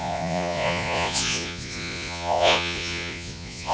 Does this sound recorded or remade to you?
remade